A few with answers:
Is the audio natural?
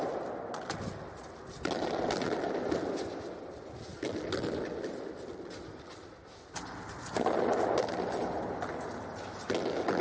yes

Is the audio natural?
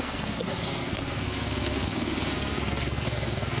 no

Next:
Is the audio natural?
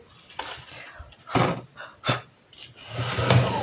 yes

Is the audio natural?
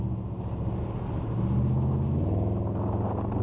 yes